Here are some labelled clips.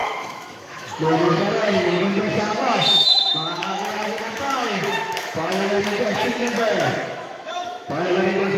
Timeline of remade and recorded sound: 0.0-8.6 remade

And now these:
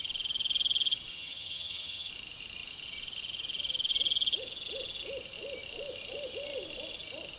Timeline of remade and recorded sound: 0.0-1.1 recorded; 1.1-2.1 remade; 2.1-7.4 recorded

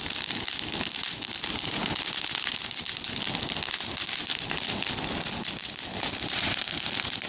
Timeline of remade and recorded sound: 0.0-7.3 recorded